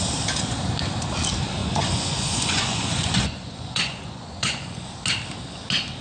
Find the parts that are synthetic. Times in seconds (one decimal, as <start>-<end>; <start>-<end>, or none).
1.6-4.9